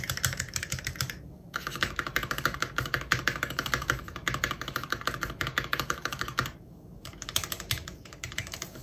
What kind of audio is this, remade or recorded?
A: remade